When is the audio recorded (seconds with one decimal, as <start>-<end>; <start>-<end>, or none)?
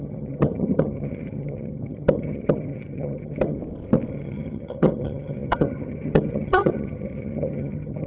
3.6-4.1